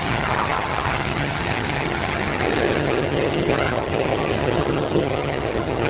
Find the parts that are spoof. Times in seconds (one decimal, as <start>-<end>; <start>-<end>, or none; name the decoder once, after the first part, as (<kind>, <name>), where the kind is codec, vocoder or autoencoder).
0.0-5.9 (vocoder, HiFi-GAN)